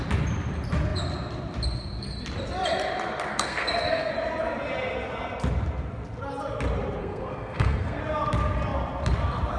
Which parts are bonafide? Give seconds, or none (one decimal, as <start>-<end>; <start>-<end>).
0.0-3.3; 4.1-7.0; 8.0-9.6